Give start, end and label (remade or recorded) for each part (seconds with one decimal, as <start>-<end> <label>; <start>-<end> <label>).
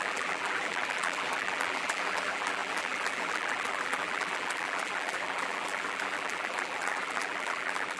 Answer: 0.0-8.0 remade